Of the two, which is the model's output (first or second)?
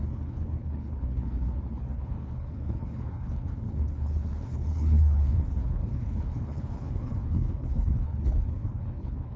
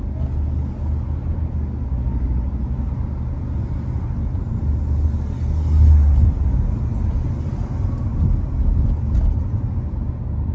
first